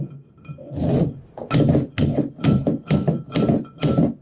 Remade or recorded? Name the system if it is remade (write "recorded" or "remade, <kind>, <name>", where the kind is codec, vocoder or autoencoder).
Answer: recorded